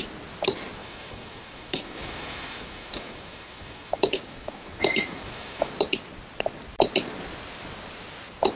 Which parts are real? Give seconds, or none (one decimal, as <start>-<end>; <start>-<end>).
0.0-0.8; 5.7-8.6